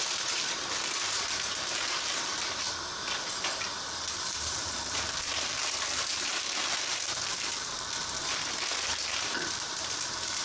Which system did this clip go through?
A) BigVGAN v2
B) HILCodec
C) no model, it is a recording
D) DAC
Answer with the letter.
A